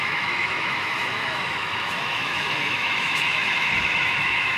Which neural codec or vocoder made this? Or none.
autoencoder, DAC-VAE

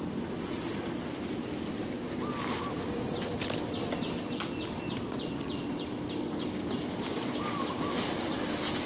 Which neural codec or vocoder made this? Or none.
none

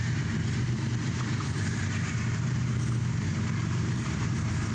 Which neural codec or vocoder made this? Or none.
vocoder, BigVGAN v2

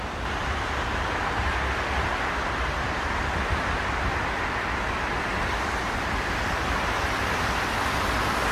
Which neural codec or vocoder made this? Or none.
none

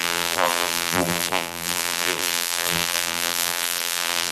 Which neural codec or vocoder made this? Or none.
vocoder, BigVGAN v2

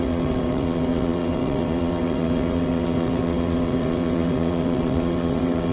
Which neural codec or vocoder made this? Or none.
vocoder, WaveNeXt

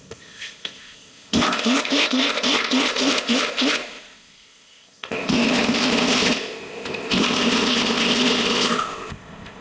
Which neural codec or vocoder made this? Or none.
codec, ZipCodec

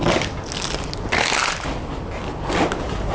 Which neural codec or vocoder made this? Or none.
none